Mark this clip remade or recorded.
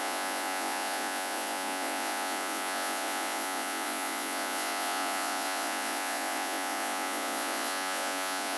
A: remade